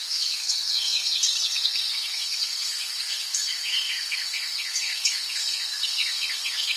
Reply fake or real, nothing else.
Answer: fake